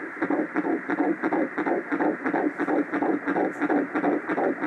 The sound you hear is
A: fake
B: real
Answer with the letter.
B